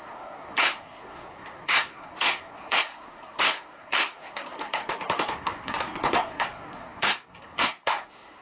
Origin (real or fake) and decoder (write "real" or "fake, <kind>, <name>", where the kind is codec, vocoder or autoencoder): fake, codec, SNAC